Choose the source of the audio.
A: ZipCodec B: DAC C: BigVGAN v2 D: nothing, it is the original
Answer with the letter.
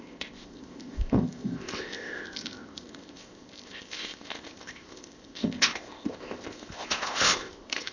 A